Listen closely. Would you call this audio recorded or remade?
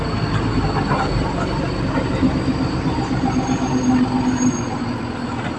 recorded